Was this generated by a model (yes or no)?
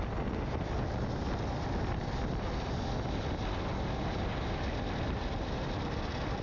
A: no